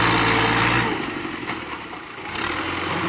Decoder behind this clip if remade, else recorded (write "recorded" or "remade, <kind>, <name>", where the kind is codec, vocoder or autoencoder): recorded